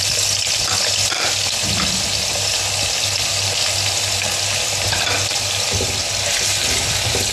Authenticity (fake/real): real